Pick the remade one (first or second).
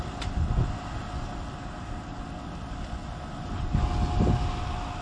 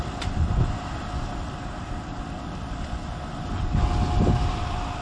second